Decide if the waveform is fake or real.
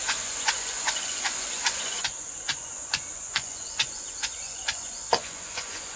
fake